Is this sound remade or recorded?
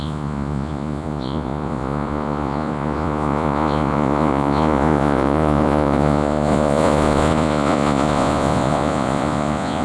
remade